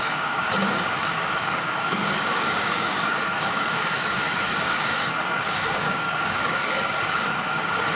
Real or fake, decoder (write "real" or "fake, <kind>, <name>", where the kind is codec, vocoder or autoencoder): fake, codec, DAC